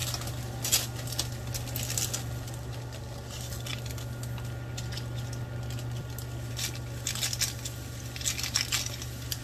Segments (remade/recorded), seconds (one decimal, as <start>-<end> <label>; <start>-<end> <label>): 0.0-9.4 recorded